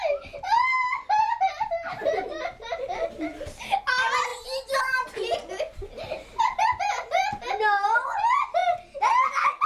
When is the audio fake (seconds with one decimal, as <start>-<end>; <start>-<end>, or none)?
none